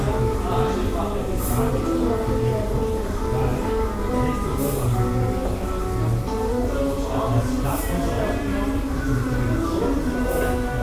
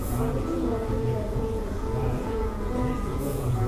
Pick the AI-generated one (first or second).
second